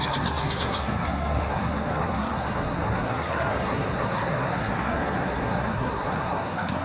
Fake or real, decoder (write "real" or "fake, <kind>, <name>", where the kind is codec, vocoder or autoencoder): fake, codec, SNAC